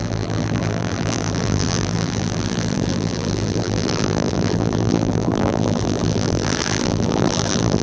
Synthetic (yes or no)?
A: yes